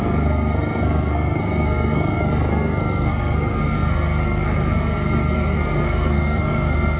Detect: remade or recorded remade